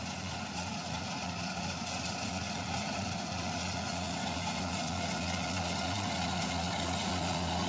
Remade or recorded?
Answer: remade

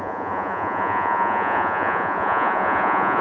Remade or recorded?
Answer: remade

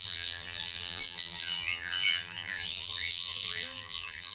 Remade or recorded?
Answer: remade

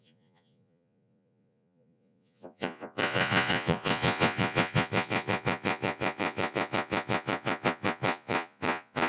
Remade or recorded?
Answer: remade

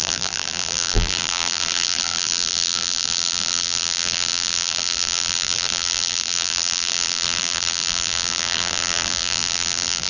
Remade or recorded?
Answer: remade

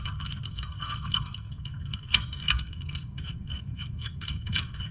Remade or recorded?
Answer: remade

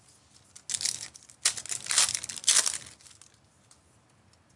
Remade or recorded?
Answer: recorded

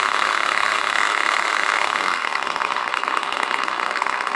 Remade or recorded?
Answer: remade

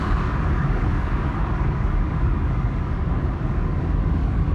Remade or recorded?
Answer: remade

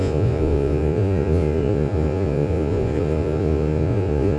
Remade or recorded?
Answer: remade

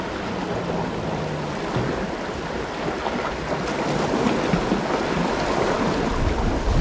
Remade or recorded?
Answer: recorded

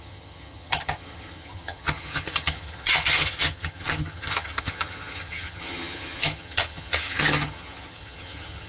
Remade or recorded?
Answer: remade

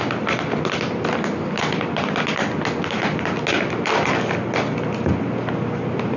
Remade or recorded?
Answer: recorded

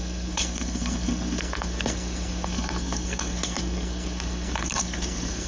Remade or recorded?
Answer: remade